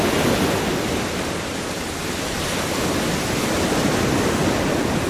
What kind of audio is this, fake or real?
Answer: real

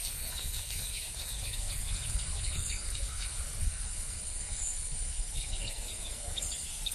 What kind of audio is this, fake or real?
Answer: fake